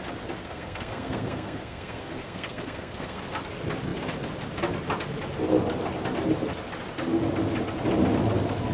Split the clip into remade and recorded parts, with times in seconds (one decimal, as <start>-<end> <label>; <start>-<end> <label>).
0.0-0.4 recorded; 0.4-3.2 remade; 3.2-8.7 recorded

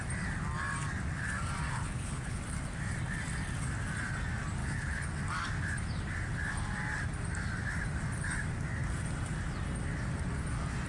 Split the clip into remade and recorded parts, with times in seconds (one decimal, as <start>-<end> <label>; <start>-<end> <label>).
0.0-1.7 recorded; 1.7-2.4 remade; 2.4-4.6 recorded; 4.6-5.1 remade; 5.1-10.9 recorded

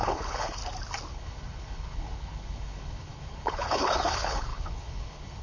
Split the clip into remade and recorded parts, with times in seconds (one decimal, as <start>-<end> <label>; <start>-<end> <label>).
0.0-0.6 remade; 0.6-1.1 recorded; 1.1-5.4 remade

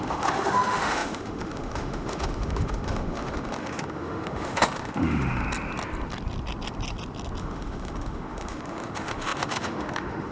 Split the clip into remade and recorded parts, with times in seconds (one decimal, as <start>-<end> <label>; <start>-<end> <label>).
0.0-5.4 remade; 5.4-7.4 recorded; 7.4-10.3 remade

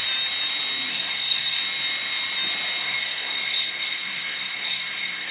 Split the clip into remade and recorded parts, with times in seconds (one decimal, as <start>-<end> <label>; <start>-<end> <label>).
0.0-0.9 recorded; 0.9-1.6 remade; 1.6-2.8 recorded; 2.8-5.3 remade

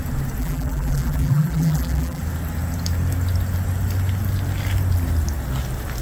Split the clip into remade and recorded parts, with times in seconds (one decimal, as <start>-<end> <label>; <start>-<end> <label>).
0.0-0.4 recorded; 0.4-2.2 remade; 2.2-6.0 recorded